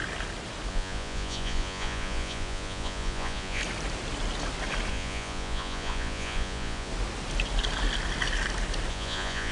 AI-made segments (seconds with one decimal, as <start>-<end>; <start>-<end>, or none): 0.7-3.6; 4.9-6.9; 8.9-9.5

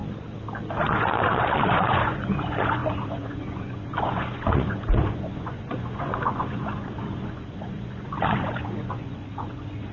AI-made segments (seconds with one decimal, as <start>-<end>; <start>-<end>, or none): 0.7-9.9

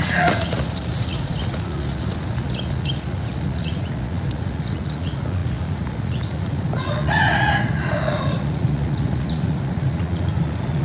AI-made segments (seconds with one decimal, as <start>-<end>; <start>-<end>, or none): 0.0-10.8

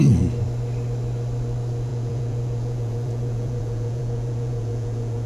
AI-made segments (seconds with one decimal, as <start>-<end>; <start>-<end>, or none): 1.9-5.3

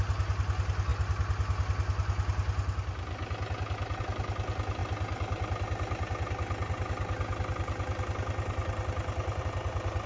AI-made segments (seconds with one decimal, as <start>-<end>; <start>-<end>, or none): none